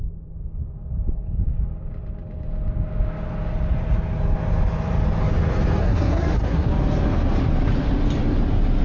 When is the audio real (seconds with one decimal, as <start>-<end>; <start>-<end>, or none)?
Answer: 0.0-5.8; 6.7-8.8